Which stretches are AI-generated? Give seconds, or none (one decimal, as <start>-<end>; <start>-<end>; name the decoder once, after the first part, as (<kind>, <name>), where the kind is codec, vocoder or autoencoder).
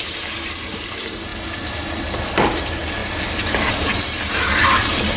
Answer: 0.0-1.3 (vocoder, BigVGAN v2); 2.4-5.2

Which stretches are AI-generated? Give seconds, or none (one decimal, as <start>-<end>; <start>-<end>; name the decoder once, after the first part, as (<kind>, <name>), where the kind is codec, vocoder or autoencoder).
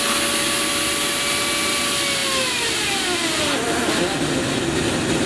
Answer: none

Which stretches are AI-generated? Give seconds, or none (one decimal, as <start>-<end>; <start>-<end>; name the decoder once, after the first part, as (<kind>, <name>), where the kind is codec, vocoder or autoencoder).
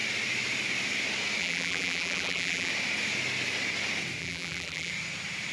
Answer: 1.4-2.7 (vocoder, BigVGAN v2); 4.2-4.9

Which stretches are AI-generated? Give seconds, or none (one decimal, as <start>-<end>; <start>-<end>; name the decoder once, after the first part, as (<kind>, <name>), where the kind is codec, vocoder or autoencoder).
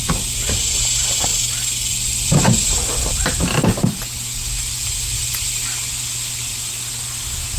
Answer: none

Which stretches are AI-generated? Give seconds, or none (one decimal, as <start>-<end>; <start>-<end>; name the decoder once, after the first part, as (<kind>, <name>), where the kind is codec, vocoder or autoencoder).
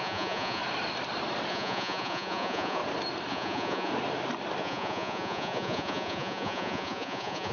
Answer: 0.0-0.6 (vocoder, Vocos); 1.5-2.8; 3.3-3.9; 4.6-7.5